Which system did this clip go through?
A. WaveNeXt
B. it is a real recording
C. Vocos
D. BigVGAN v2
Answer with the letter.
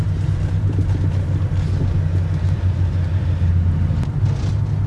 B